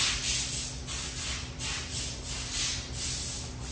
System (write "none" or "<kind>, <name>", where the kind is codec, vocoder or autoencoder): none